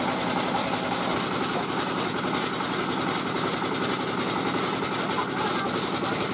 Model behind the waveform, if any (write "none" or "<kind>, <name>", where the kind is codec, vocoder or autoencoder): vocoder, BigVGAN v2